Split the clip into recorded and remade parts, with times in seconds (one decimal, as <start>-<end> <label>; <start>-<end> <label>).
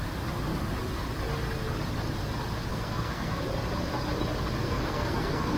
0.0-2.7 recorded; 2.7-3.4 remade; 3.4-4.6 recorded; 4.6-5.6 remade